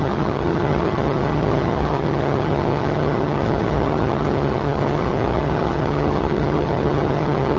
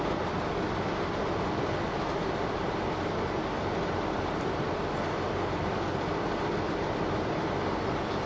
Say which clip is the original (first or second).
second